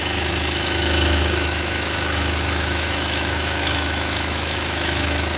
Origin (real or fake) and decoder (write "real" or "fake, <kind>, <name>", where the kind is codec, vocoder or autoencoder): fake, autoencoder, DAC-VAE